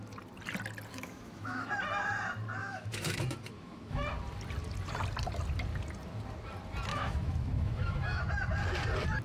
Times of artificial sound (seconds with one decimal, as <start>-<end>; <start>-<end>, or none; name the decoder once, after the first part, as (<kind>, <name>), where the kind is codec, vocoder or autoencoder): 0.9-1.7 (autoencoder, DAC-VAE); 2.6-4.0; 6.9-8.2